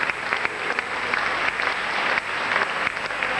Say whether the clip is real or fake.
real